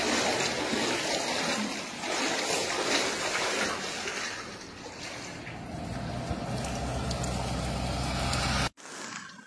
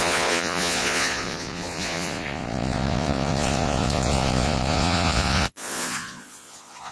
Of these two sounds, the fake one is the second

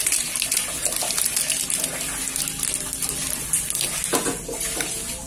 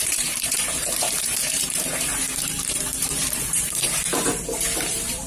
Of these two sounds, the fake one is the second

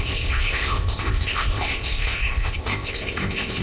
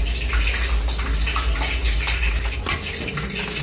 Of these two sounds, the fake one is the first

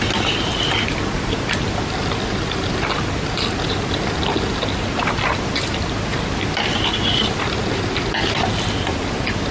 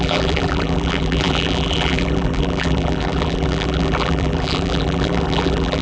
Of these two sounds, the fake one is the second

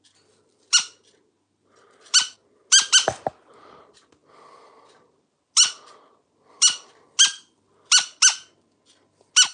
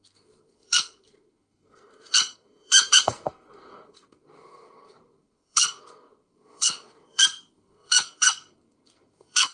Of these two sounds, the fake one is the second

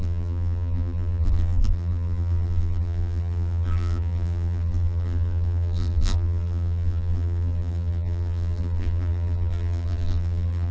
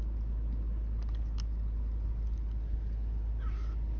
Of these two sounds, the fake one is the first